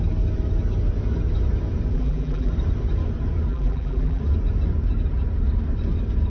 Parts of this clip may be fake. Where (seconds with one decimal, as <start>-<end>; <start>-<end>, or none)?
1.9-2.5; 3.5-4.2